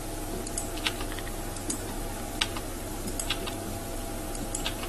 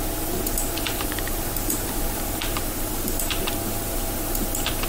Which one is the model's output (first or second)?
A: second